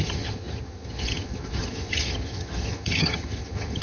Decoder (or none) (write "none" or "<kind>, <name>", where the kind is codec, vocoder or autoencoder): vocoder, HiFi-GAN